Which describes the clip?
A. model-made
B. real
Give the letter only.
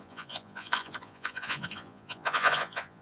A